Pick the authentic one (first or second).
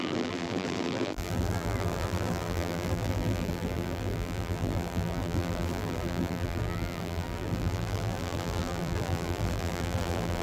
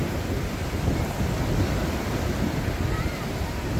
second